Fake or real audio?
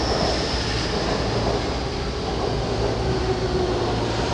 real